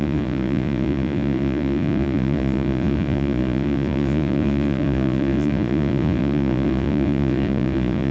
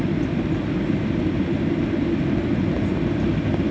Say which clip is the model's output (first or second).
first